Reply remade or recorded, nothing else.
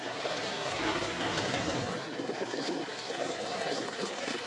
remade